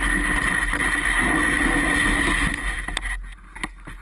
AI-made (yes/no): no